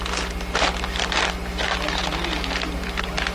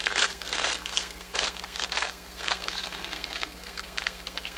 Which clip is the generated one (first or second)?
second